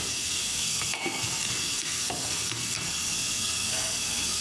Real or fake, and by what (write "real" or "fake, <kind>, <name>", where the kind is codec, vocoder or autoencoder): fake, codec, SNAC